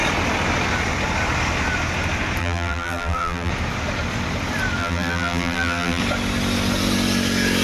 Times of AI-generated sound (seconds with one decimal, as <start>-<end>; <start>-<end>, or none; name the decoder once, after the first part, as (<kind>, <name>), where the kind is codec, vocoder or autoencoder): 2.4-3.5 (vocoder, BigVGAN v2); 4.8-6.0